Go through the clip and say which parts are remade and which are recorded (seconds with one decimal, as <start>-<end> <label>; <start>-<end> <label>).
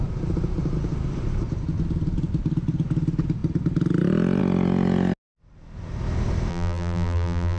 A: 0.0-6.5 recorded; 6.5-7.6 remade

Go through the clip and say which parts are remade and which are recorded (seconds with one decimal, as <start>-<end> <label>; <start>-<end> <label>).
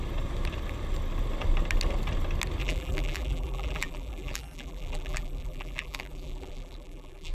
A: 0.0-2.6 recorded; 2.6-7.3 remade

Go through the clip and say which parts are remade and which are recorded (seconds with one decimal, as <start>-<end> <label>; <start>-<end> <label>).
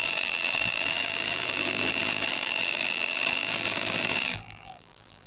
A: 0.0-5.3 remade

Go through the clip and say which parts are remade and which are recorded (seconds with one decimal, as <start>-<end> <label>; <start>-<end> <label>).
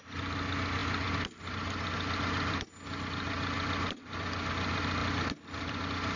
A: 0.0-5.0 recorded; 5.0-5.8 remade; 5.8-6.2 recorded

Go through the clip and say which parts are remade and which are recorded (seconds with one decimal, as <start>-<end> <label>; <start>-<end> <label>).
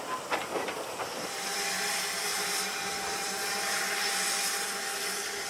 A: 0.0-2.3 recorded; 2.3-3.8 remade; 3.8-5.5 recorded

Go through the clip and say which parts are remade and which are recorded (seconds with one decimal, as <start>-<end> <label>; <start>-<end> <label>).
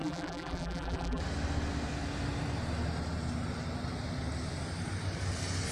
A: 0.0-1.2 remade; 1.2-5.7 recorded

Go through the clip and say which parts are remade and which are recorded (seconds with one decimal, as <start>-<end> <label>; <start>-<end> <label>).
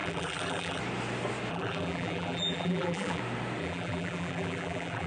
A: 0.0-0.8 remade; 0.8-1.5 recorded; 1.5-3.2 remade; 3.2-3.6 recorded; 3.6-5.1 remade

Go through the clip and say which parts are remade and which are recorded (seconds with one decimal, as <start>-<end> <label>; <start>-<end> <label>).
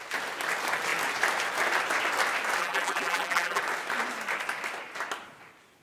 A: 0.0-2.6 recorded; 2.6-3.6 remade; 3.6-5.8 recorded